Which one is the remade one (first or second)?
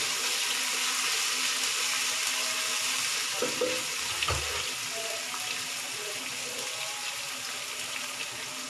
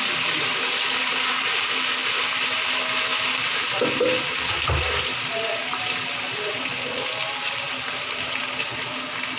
second